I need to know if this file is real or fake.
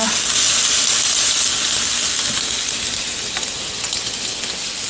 real